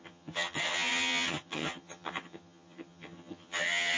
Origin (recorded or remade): remade